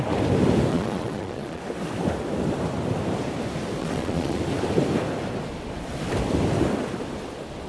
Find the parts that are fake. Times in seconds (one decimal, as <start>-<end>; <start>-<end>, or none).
0.7-1.6; 3.8-4.4